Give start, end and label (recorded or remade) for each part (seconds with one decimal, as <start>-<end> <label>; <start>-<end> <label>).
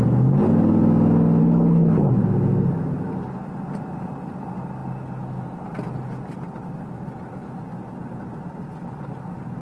0.0-1.4 recorded; 1.4-2.1 remade; 2.1-9.6 recorded